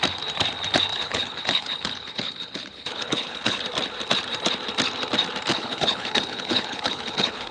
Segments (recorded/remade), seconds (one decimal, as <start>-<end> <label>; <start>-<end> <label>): 0.0-0.9 recorded; 0.9-3.6 remade; 3.6-5.5 recorded; 5.5-7.5 remade